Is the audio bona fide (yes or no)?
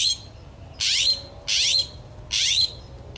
yes